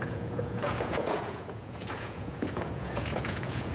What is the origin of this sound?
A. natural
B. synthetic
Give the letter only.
B